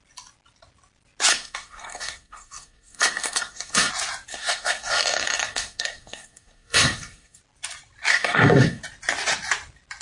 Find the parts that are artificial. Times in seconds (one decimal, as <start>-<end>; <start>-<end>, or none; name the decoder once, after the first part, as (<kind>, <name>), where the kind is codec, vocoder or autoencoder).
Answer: 1.3-3.9 (codec, SNAC); 4.3-7.4; 8.1-8.8